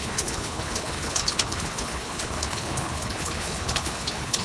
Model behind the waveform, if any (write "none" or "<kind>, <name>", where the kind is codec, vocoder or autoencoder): codec, HILCodec